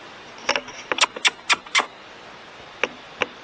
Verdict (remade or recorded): recorded